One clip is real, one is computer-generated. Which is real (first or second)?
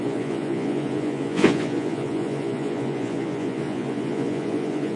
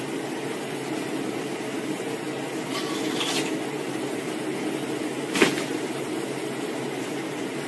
second